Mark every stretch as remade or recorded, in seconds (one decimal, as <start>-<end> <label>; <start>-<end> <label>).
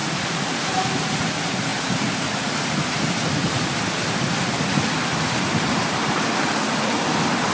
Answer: 0.0-7.5 recorded